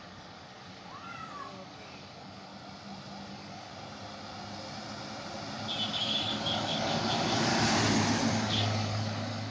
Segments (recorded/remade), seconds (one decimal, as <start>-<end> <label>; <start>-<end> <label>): 0.0-2.5 remade; 2.5-3.3 recorded; 3.3-3.7 remade; 3.7-5.9 recorded; 5.9-7.5 remade; 7.5-8.3 recorded; 8.3-9.5 remade